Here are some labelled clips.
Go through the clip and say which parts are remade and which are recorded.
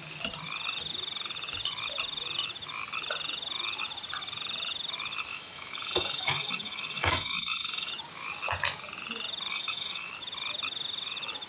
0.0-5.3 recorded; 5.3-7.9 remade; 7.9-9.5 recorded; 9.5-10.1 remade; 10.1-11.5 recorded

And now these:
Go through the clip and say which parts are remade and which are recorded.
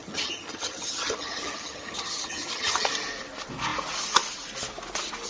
0.0-2.9 remade; 2.9-5.3 recorded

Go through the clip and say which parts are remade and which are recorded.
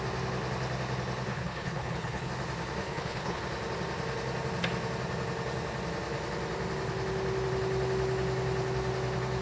0.0-1.3 recorded; 1.3-2.3 remade; 2.3-2.8 recorded; 2.8-3.4 remade; 3.4-9.4 recorded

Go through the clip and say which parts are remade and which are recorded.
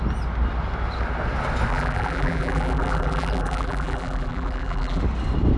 0.0-1.7 recorded; 1.7-5.0 remade; 5.0-5.6 recorded